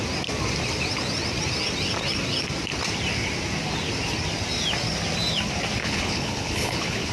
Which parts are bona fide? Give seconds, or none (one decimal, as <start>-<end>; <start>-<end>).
0.0-5.8